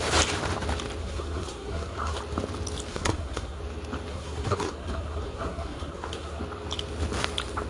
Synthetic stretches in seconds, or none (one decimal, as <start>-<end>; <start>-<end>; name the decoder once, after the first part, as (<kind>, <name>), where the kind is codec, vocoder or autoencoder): 1.0-2.2 (codec, SNAC); 2.9-3.6; 4.1-6.4